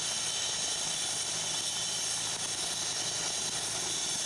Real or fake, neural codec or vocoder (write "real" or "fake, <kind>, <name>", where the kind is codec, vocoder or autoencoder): real